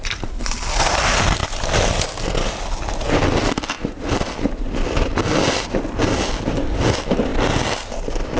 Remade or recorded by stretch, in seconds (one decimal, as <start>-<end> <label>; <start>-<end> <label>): 0.0-8.4 recorded